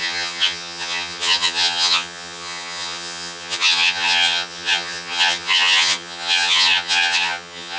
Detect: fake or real fake